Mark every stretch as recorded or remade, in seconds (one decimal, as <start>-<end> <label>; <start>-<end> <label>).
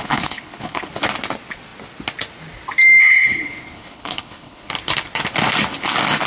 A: 0.0-0.9 remade; 0.9-3.0 recorded; 3.0-4.7 remade; 4.7-6.3 recorded